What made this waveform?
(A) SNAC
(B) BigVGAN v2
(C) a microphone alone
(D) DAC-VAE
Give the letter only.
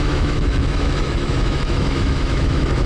D